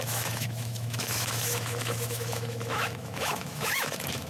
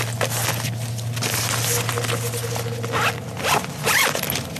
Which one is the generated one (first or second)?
first